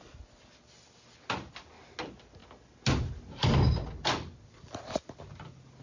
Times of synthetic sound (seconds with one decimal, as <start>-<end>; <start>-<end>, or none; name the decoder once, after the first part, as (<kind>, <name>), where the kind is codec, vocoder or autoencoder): none